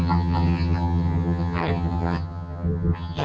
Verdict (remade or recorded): remade